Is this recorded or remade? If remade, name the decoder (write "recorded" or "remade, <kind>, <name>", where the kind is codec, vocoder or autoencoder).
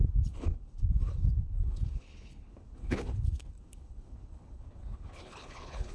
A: remade, codec, HILCodec